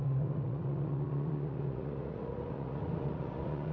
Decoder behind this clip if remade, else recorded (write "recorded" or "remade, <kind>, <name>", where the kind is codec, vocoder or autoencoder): remade, vocoder, Vocos